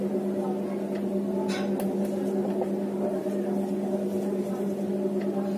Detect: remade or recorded recorded